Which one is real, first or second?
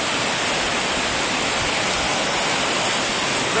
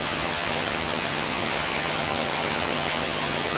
first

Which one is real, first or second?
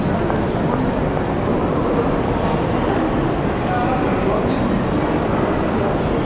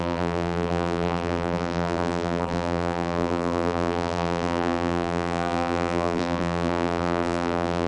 first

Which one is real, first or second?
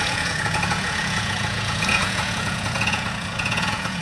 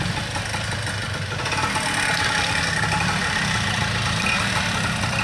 second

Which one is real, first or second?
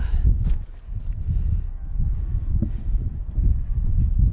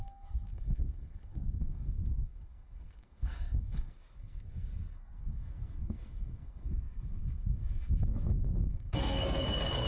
first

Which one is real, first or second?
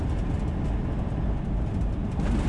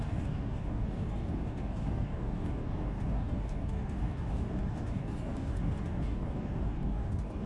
first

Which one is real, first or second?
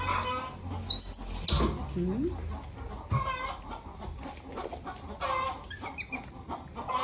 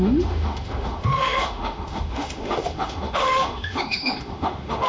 first